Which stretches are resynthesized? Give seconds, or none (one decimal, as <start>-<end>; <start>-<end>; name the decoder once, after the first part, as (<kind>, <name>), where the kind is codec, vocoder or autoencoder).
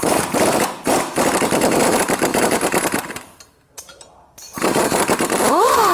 0.0-5.9 (vocoder, BigVGAN v2)